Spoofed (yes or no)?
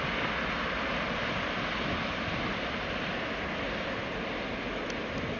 no